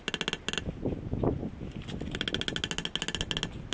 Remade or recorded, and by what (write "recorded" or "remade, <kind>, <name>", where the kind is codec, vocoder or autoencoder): recorded